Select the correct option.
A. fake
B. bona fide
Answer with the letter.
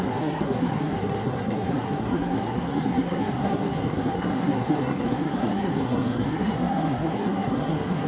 A